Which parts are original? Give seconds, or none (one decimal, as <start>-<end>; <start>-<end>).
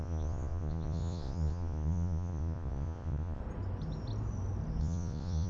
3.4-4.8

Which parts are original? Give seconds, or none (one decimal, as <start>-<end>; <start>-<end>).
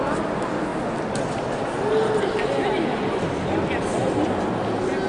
0.0-5.1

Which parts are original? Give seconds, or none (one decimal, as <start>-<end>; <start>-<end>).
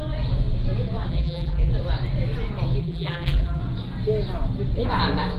0.0-1.1; 1.7-2.8; 3.6-5.4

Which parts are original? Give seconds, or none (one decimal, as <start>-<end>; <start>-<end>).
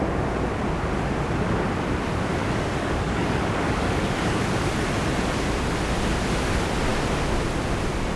0.0-2.4; 4.4-8.2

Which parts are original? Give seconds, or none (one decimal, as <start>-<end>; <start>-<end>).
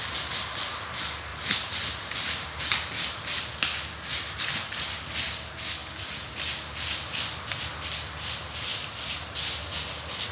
0.0-1.3; 3.4-10.3